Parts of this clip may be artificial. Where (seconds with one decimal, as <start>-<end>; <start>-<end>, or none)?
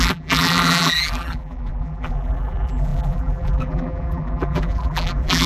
0.0-5.5